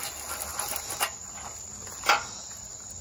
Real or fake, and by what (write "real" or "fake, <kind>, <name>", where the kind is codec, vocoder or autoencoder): real